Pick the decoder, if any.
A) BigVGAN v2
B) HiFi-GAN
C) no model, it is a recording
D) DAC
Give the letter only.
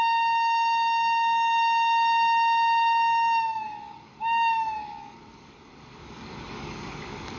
D